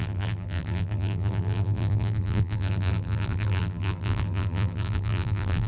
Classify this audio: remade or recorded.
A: remade